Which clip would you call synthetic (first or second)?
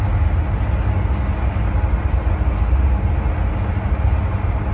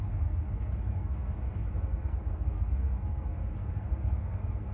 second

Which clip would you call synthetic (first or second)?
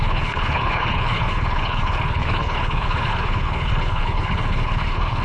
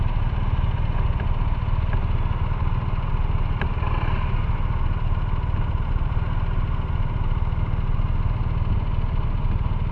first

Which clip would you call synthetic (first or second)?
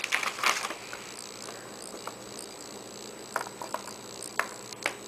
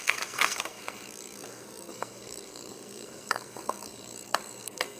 second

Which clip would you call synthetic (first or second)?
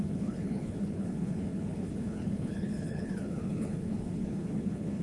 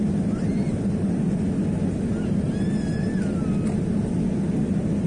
first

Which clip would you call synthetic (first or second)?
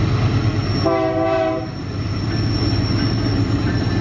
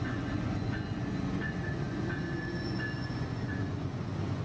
second